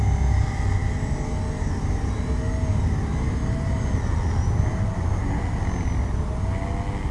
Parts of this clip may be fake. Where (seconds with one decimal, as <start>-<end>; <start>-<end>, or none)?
4.7-5.2

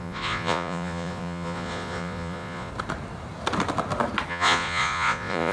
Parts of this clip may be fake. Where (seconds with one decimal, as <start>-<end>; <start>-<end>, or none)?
0.0-2.7; 4.3-5.5